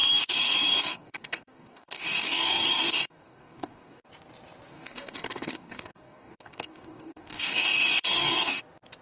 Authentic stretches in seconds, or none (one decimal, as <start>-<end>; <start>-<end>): 4.1-4.7; 8.6-9.0